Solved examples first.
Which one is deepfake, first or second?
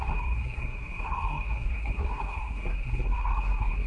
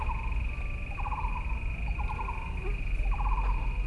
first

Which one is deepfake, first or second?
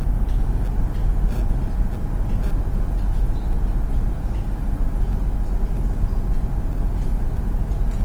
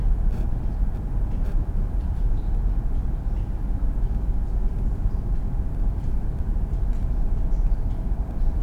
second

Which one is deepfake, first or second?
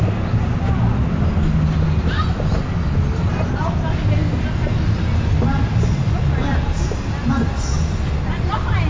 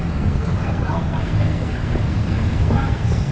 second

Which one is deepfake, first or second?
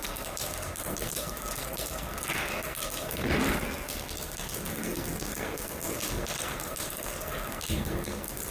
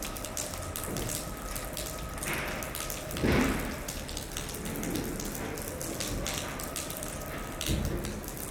first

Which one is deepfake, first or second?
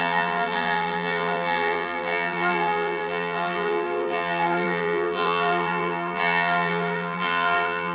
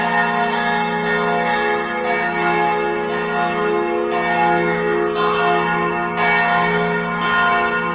first